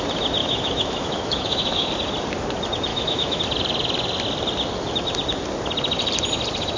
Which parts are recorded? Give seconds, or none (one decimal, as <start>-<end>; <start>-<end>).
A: 0.0-0.4; 1.9-2.9; 3.4-6.8